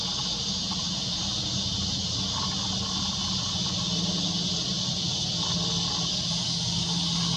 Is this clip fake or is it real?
real